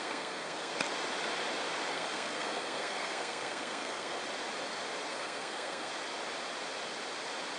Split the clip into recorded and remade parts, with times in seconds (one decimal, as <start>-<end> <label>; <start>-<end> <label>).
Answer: 0.0-0.7 remade; 0.7-1.9 recorded; 1.9-4.2 remade; 4.2-5.1 recorded; 5.1-5.9 remade; 5.9-7.6 recorded